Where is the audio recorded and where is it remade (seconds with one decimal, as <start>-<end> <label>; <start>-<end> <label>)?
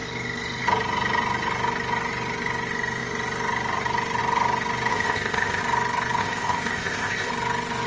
0.0-4.9 recorded; 4.9-5.6 remade; 5.6-6.2 recorded; 6.2-7.3 remade; 7.3-7.9 recorded